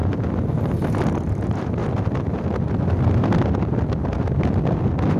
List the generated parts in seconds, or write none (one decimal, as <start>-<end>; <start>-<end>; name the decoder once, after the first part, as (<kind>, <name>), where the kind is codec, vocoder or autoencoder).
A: none